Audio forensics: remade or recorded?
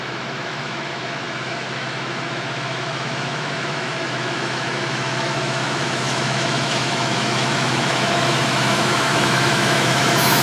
remade